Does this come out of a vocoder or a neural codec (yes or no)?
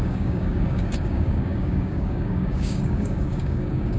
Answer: yes